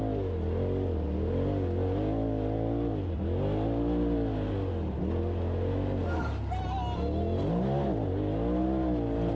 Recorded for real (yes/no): yes